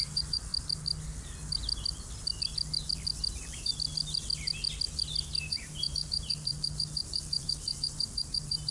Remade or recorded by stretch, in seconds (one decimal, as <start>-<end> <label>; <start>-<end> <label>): 0.0-0.5 remade; 0.5-3.3 recorded; 3.3-3.7 remade; 3.7-5.4 recorded; 5.4-8.7 remade